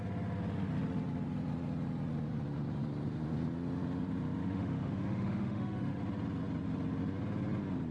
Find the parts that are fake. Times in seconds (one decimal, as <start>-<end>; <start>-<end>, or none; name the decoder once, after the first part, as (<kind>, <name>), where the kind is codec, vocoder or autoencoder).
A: 4.4-6.0 (autoencoder, DAC-VAE)